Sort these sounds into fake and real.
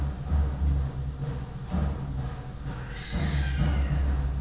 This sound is real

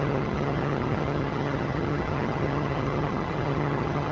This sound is fake